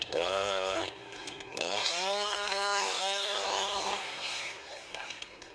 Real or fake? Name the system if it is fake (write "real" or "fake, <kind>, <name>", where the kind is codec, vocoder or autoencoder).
fake, codec, SNAC